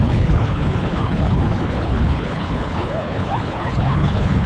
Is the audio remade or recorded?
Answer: remade